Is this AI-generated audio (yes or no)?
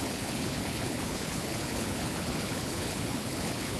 yes